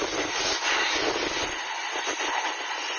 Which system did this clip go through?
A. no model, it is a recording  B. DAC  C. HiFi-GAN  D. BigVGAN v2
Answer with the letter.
A